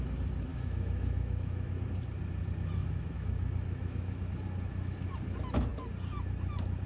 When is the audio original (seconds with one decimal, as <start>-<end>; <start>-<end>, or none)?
0.0-0.5; 1.7-2.8; 4.3-6.9